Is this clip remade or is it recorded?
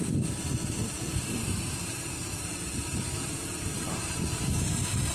remade